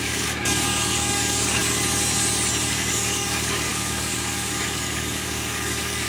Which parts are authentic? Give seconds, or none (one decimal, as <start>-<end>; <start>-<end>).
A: 1.6-2.9